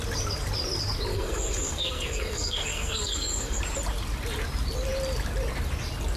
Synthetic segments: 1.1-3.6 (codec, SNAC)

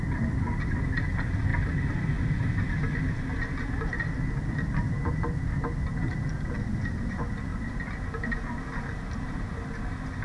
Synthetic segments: none

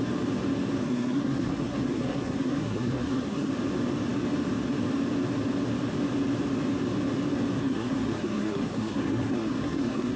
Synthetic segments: 0.8-3.5 (codec, SNAC); 7.6-10.2